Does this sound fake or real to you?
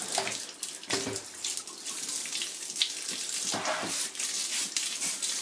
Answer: real